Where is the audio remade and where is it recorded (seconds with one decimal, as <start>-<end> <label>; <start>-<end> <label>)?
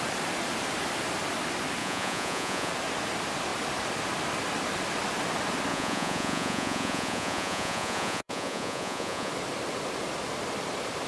0.0-1.8 recorded; 1.8-2.7 remade; 2.7-5.7 recorded; 5.7-9.3 remade; 9.3-11.1 recorded